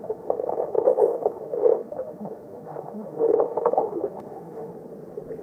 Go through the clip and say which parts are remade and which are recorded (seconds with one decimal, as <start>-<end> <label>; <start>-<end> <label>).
0.0-4.7 remade; 4.7-5.4 recorded

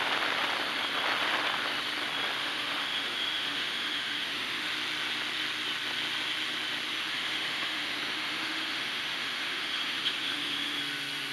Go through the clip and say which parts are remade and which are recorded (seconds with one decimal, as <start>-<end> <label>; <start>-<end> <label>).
0.0-2.4 recorded; 2.4-4.7 remade; 4.7-6.9 recorded; 6.9-10.8 remade; 10.8-11.3 recorded

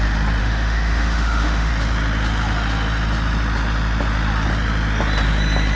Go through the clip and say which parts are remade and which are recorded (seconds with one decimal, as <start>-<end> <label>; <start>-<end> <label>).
0.0-0.4 recorded; 0.4-1.7 remade; 1.7-5.8 recorded